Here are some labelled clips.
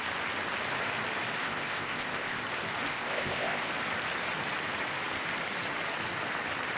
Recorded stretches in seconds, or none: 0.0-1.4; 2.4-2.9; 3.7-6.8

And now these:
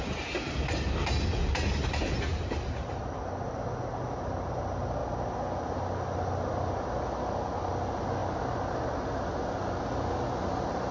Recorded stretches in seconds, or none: 0.0-10.9

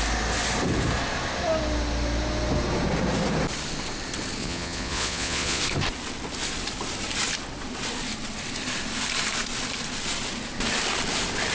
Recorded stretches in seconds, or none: 0.0-4.4; 5.6-11.5

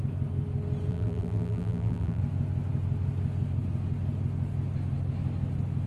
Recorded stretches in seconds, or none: 0.0-0.9; 2.2-5.9

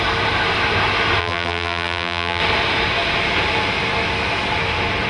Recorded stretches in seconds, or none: 0.0-1.2; 2.4-5.1

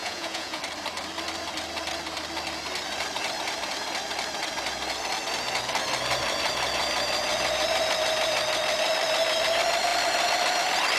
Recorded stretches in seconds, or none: 0.6-11.0